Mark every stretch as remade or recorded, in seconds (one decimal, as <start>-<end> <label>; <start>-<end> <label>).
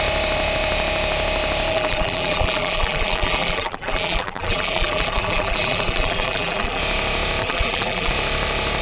0.0-1.7 recorded; 1.7-6.8 remade; 6.8-7.4 recorded; 7.4-8.1 remade; 8.1-8.8 recorded